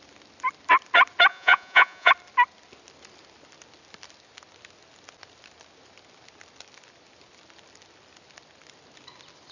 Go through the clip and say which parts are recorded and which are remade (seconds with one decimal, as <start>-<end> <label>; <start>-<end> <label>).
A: 0.0-1.3 recorded; 1.3-2.1 remade; 2.1-9.5 recorded